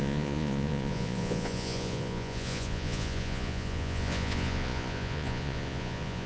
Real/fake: fake